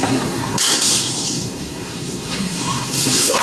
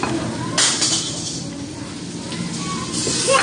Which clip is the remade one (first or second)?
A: first